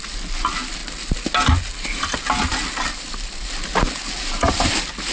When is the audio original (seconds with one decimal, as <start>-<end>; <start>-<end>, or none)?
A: 0.0-5.1